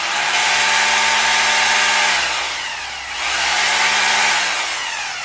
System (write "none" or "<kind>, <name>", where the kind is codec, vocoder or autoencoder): none